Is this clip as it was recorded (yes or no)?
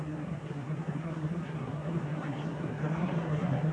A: no